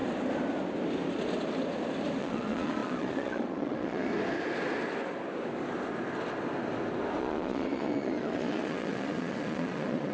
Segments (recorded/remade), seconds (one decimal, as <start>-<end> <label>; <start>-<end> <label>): 0.0-2.2 recorded; 2.2-4.1 remade; 4.1-7.2 recorded; 7.2-10.1 remade